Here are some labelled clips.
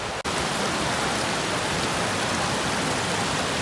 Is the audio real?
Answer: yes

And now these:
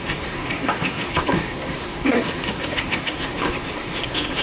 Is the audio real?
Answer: no